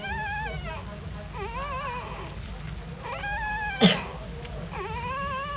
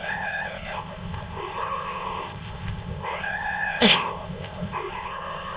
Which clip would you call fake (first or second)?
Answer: second